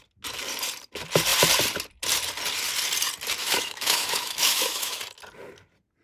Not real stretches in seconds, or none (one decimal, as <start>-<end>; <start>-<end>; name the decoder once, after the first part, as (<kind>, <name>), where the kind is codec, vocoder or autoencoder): 3.4-5.0 (autoencoder, DAC-VAE)

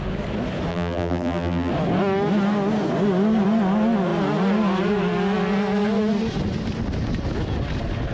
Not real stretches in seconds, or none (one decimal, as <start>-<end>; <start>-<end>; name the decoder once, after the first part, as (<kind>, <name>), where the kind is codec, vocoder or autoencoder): 0.7-1.7 (vocoder, BigVGAN v2)

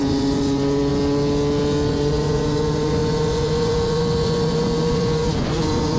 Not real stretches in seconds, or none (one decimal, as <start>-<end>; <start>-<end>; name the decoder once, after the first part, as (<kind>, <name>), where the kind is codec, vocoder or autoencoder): 0.0-0.9 (vocoder, Vocos); 1.9-6.0

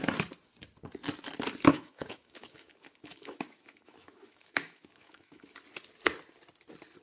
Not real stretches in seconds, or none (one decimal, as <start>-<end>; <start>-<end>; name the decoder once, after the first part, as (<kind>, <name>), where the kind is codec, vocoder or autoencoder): 1.7-5.5 (autoencoder, DAC-VAE)

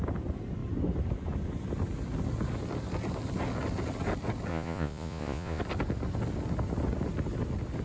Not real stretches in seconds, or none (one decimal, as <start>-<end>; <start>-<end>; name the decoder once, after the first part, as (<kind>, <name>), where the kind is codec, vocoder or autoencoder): 4.5-5.6 (vocoder, Vocos)